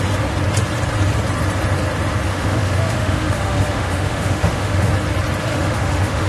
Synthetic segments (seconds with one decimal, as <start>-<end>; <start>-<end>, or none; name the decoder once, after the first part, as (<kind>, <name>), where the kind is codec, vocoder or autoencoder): 2.3-4.9 (autoencoder, DAC-VAE); 5.5-6.3